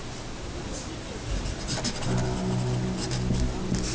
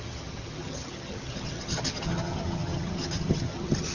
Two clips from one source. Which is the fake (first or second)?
second